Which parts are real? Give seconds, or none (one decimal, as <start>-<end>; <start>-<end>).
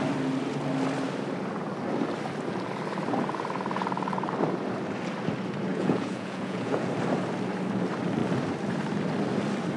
0.0-5.7; 6.9-9.8